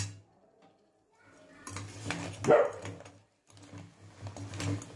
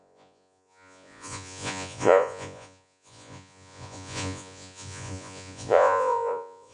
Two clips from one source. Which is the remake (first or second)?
second